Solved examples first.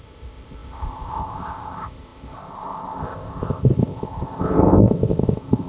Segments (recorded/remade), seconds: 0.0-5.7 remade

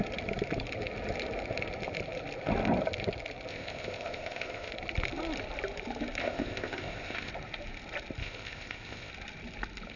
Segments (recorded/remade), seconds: 0.0-3.5 recorded; 3.5-4.7 remade; 4.7-6.2 recorded; 6.2-7.3 remade; 7.3-8.2 recorded; 8.2-9.1 remade; 9.1-10.0 recorded

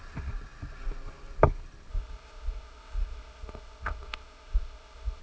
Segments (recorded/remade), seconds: 0.0-1.9 recorded; 1.9-5.2 remade

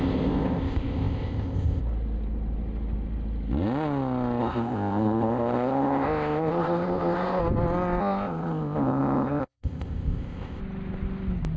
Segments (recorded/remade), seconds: 0.0-1.8 remade; 1.8-4.4 recorded; 4.4-7.4 remade; 7.4-8.0 recorded; 8.0-10.6 remade; 10.6-11.6 recorded